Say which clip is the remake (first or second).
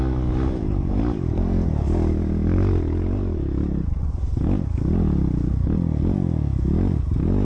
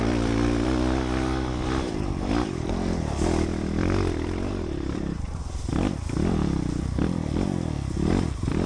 second